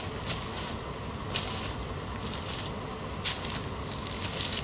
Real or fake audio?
real